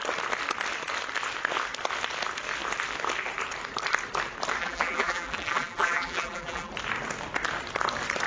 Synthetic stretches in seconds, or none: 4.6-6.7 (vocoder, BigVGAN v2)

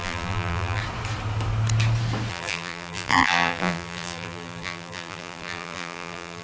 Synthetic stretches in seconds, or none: 0.0-0.8 (vocoder, BigVGAN v2); 2.3-6.4

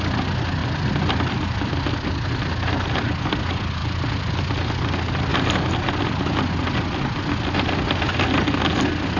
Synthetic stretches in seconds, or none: 0.6-1.7 (vocoder, BigVGAN v2)

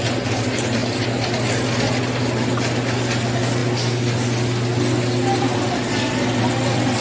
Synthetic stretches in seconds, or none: none

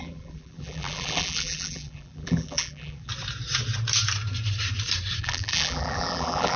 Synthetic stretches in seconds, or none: 0.0-3.1 (vocoder, BigVGAN v2); 5.2-6.6

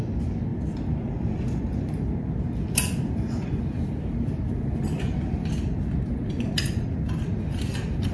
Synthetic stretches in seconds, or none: none

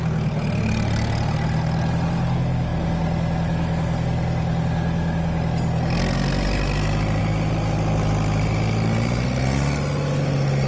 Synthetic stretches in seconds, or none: none